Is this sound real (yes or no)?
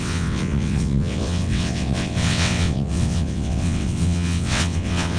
no